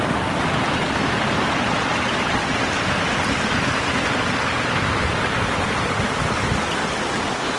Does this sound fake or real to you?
real